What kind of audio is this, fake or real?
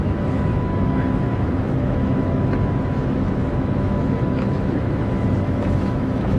fake